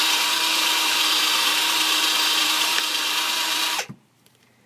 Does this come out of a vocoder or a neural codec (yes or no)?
yes